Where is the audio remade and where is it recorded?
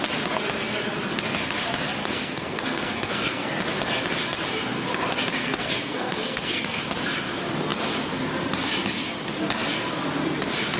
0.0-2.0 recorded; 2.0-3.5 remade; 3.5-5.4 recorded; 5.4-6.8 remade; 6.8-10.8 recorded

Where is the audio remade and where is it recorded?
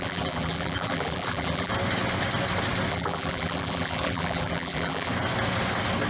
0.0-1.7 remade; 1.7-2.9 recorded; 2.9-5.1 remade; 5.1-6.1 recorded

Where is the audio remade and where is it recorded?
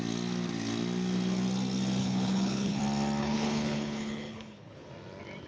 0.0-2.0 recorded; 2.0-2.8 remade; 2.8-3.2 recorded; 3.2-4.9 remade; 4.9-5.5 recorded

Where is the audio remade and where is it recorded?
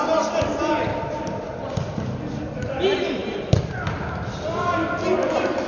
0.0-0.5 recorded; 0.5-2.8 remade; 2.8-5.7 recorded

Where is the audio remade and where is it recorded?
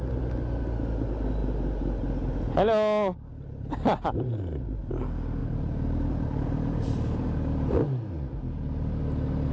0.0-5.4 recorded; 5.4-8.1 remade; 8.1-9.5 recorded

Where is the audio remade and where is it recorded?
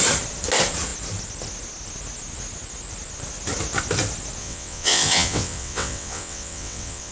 0.0-4.4 recorded; 4.4-7.1 remade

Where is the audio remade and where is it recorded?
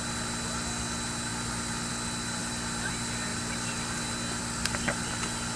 0.0-1.3 recorded; 1.3-1.9 remade; 1.9-2.4 recorded; 2.4-2.9 remade; 2.9-3.3 recorded; 3.3-4.0 remade; 4.0-4.4 recorded; 4.4-5.1 remade; 5.1-5.6 recorded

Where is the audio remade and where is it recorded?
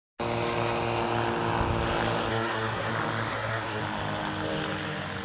0.0-2.3 recorded; 2.3-2.9 remade; 2.9-3.3 recorded; 3.3-3.8 remade; 3.8-5.2 recorded